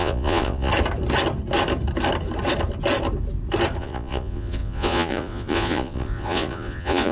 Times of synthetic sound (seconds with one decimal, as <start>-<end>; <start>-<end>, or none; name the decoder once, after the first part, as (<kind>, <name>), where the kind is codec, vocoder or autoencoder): 0.0-0.7 (vocoder, Vocos); 3.8-7.1